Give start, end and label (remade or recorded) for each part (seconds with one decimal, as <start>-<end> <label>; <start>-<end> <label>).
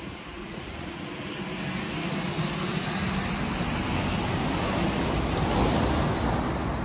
0.0-0.4 recorded; 0.4-1.0 remade; 1.0-6.8 recorded